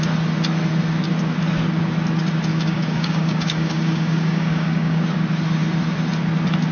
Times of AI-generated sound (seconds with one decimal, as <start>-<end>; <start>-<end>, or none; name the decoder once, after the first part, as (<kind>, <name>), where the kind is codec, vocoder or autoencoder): 2.5-5.0 (codec, DAC)